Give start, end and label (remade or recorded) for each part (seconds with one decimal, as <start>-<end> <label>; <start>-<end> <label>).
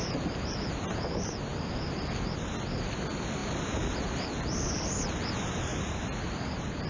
0.0-1.5 recorded; 1.5-2.4 remade; 2.4-3.4 recorded; 3.4-4.9 remade; 4.9-6.9 recorded